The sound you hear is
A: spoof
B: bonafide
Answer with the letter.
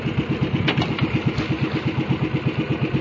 B